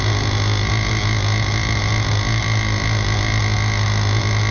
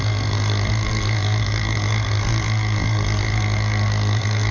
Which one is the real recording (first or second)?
first